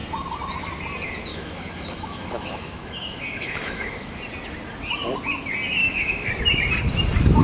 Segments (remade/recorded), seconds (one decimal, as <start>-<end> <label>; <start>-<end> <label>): 0.0-1.3 recorded; 1.3-4.2 remade; 4.2-5.8 recorded; 5.8-6.3 remade; 6.3-7.4 recorded